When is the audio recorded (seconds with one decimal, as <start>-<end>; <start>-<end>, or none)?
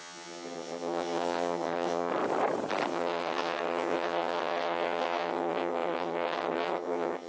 2.1-2.9